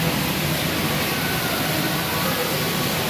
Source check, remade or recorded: recorded